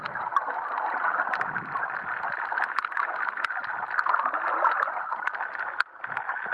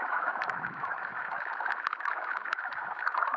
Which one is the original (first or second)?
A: first